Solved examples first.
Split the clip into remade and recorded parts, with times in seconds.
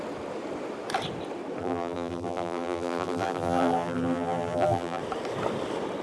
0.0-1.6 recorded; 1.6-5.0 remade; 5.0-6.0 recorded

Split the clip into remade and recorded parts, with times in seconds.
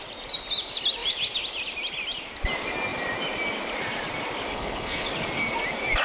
0.0-4.5 recorded; 4.5-5.1 remade; 5.1-6.0 recorded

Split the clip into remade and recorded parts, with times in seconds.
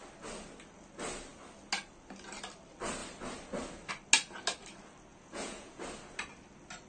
0.0-5.1 recorded; 5.1-5.8 remade; 5.8-6.9 recorded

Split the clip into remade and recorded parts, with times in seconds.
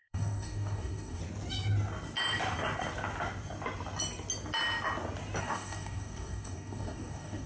0.0-1.2 remade; 1.2-5.4 recorded; 5.4-7.5 remade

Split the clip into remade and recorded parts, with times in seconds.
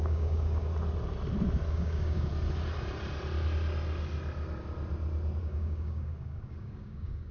0.0-0.7 remade; 0.7-1.7 recorded; 1.7-2.3 remade; 2.3-5.4 recorded; 5.4-7.3 remade